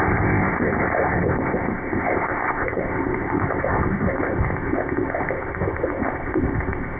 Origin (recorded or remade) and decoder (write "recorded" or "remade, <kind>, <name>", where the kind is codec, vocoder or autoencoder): remade, codec, ZipCodec